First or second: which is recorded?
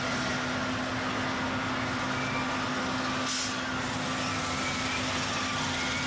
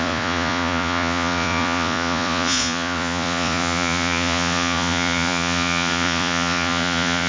first